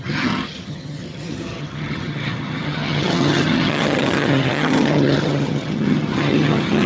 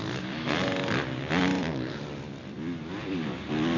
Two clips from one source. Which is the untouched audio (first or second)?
second